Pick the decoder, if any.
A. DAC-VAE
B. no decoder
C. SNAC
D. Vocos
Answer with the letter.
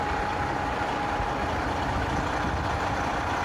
B